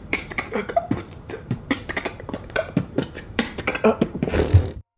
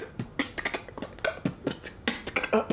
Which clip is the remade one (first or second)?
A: first